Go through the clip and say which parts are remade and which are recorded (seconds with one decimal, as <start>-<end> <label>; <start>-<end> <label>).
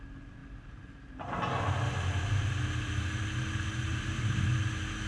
0.0-3.9 recorded; 3.9-4.5 remade; 4.5-5.1 recorded